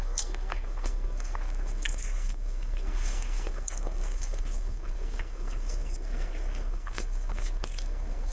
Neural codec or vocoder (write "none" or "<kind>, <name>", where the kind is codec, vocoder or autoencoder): codec, SNAC